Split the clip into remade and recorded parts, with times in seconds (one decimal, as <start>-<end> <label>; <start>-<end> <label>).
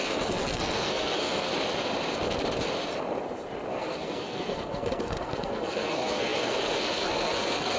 0.0-1.5 remade; 1.5-3.7 recorded; 3.7-7.8 remade